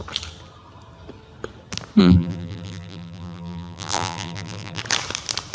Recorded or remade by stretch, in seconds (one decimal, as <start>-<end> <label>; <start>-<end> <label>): 0.0-2.0 recorded; 2.0-4.8 remade; 4.8-5.5 recorded